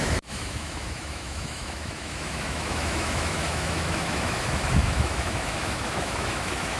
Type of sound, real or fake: fake